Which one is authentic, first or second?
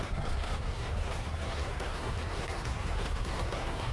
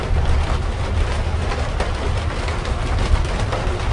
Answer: second